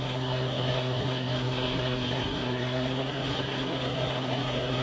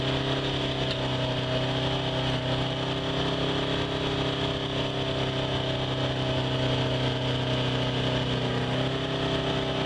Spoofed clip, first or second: first